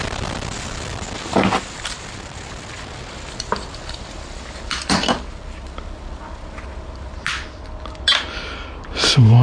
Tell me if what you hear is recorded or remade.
recorded